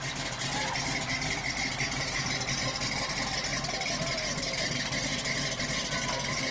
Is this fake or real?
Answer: real